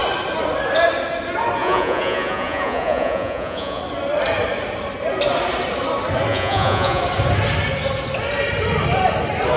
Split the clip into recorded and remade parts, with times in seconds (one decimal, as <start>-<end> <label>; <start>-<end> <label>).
0.0-1.6 recorded; 1.6-3.8 remade; 3.8-6.3 recorded; 6.3-7.0 remade; 7.0-9.6 recorded